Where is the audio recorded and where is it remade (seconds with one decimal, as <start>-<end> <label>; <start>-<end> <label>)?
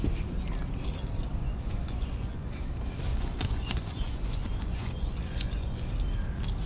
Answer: 0.0-1.4 recorded; 1.4-2.6 remade; 2.6-3.1 recorded; 3.1-5.9 remade; 5.9-6.7 recorded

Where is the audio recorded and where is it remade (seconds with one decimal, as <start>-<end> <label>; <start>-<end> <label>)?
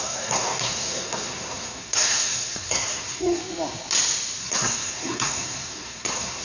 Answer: 0.0-3.4 remade; 3.4-4.4 recorded; 4.4-6.4 remade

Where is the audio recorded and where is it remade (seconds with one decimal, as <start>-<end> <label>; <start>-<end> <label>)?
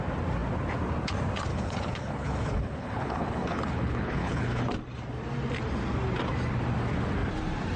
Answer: 0.0-1.5 recorded; 1.5-4.6 remade; 4.6-7.8 recorded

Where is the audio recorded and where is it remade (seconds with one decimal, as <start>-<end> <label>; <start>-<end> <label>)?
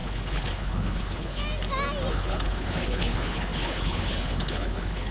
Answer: 0.0-1.4 remade; 1.4-2.1 recorded; 2.1-5.1 remade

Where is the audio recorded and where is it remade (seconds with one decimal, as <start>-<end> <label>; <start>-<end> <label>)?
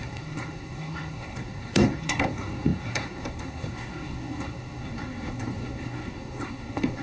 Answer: 0.0-7.0 remade